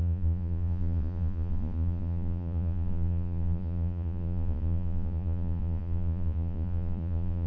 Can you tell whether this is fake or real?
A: fake